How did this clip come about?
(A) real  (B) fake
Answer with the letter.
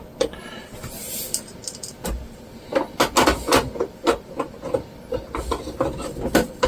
A